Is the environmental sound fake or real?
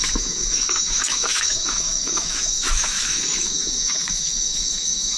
fake